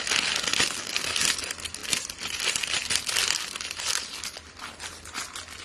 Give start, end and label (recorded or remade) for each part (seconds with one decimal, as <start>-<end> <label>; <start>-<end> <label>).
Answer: 0.0-1.8 recorded; 1.8-4.2 remade; 4.2-5.6 recorded